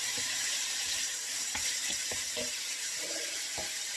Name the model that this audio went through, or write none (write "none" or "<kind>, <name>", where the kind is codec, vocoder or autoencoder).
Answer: vocoder, BigVGAN v2